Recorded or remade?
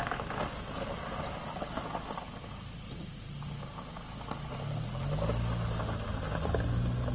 recorded